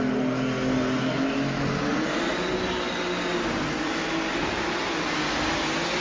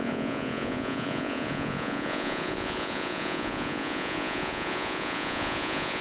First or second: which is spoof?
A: second